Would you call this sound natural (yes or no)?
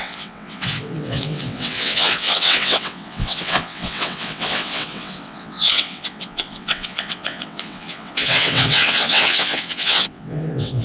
no